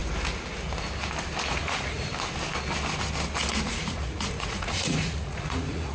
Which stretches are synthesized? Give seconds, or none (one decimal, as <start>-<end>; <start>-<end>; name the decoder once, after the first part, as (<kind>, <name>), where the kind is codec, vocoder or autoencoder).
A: 1.5-2.1 (vocoder, Vocos); 3.7-5.9